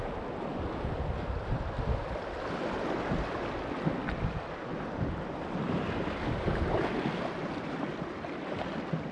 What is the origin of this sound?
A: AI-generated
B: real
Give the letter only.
B